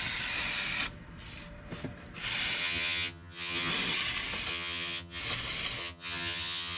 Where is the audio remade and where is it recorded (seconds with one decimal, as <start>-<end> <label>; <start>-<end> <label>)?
0.0-2.6 recorded; 2.6-3.7 remade; 3.7-4.5 recorded; 4.5-5.2 remade; 5.2-5.8 recorded; 5.8-6.8 remade